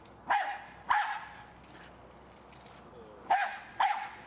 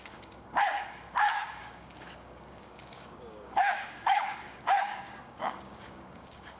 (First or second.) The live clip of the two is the first